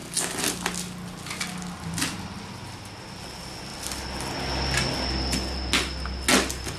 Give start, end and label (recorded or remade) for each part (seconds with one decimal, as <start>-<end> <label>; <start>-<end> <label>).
0.0-6.8 recorded